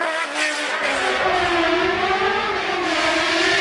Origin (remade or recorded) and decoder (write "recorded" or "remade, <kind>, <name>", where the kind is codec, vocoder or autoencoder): recorded